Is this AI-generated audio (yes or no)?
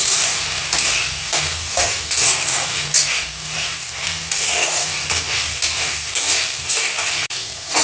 yes